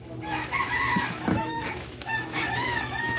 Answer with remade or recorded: remade